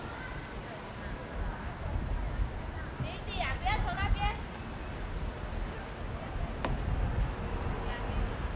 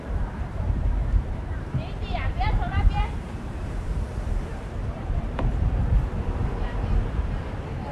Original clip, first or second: first